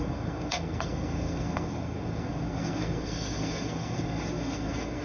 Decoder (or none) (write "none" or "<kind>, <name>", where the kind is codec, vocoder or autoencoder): codec, SNAC